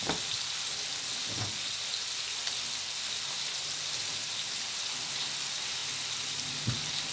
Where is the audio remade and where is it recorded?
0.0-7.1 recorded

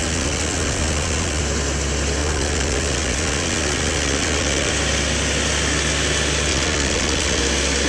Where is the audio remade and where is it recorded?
0.0-1.4 remade; 1.4-2.2 recorded; 2.2-4.7 remade; 4.7-6.5 recorded; 6.5-7.4 remade; 7.4-7.9 recorded

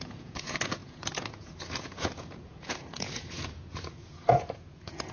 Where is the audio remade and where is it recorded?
0.0-5.1 remade

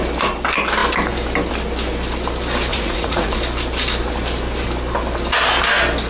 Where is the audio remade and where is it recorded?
0.0-2.7 recorded; 2.7-3.3 remade; 3.3-6.1 recorded

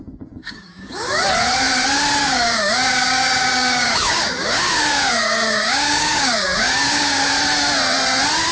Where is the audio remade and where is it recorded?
0.0-0.4 recorded; 0.4-1.2 remade; 1.2-2.2 recorded; 2.2-7.3 remade; 7.3-8.5 recorded